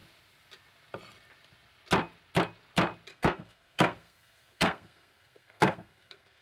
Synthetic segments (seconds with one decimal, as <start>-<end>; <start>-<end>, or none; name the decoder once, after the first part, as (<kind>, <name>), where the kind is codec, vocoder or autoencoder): 3.1-6.4 (codec, SNAC)